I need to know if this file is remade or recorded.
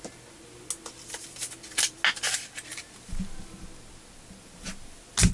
recorded